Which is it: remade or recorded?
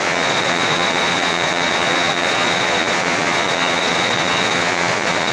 remade